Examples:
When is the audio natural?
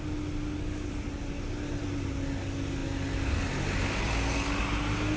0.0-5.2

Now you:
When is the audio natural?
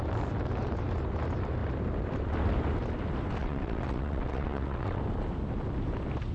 0.0-3.4; 5.0-6.3